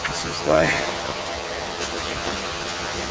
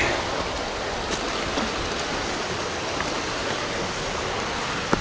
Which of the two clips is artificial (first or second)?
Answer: first